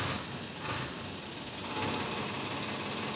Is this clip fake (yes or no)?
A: no